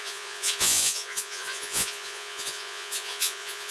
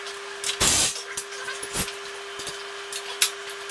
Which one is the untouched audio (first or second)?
second